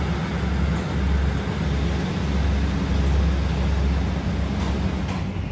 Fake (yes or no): no